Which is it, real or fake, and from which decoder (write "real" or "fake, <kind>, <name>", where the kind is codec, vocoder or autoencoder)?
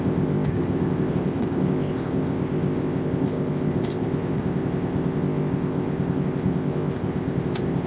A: fake, codec, ZipCodec